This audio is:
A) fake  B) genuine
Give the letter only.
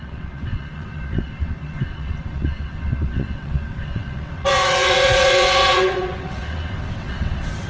A